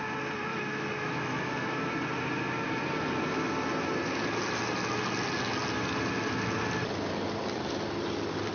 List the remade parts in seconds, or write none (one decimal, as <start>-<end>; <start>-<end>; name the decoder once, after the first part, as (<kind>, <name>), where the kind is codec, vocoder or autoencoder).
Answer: 0.5-1.8 (autoencoder, DAC-VAE)

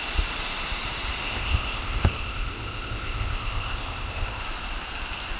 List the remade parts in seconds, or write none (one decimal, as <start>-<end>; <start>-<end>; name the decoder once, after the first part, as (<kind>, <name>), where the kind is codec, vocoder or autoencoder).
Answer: 1.2-4.4 (codec, ZipCodec)

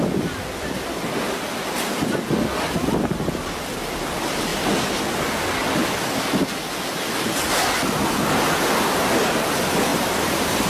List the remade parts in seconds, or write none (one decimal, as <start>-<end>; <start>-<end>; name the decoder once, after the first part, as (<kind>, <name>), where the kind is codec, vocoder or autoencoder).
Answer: 9.9-10.7 (vocoder, BigVGAN v2)

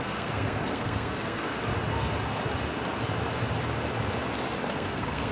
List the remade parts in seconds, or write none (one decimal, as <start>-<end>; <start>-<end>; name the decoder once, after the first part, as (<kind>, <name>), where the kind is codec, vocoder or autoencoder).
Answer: 0.0-1.5 (codec, SNAC); 4.7-5.3

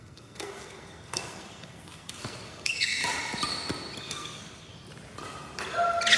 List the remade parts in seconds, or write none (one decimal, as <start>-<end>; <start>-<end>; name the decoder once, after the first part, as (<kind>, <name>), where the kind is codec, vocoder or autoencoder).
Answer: 0.0-3.0 (codec, SNAC); 4.0-4.7